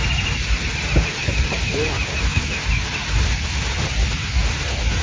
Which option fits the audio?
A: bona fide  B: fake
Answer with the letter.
A